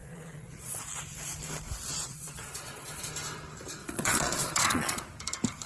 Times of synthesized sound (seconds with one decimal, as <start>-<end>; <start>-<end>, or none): 0.0-1.0; 1.9-3.1; 3.8-5.0